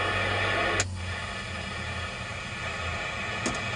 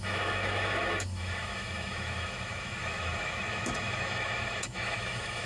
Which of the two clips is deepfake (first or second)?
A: second